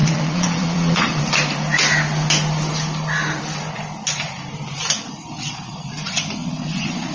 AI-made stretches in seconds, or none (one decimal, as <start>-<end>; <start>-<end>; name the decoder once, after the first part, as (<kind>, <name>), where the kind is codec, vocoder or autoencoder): 0.0-1.2 (vocoder, Vocos); 5.2-5.9; 6.4-7.1